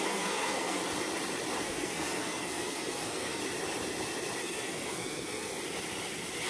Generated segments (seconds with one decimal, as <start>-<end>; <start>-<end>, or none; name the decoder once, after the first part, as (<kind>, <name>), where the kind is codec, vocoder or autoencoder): 0.0-0.8 (codec, SNAC); 1.6-3.4; 4.4-5.5